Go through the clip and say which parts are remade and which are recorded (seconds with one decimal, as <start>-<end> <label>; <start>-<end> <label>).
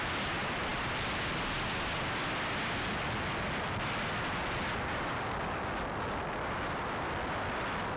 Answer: 0.0-8.0 recorded